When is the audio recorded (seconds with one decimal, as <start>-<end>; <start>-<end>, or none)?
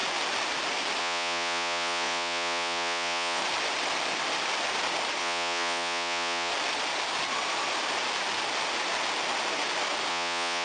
0.0-1.0; 3.4-5.2; 6.5-10.1